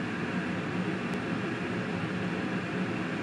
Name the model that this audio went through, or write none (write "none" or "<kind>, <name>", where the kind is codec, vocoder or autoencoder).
none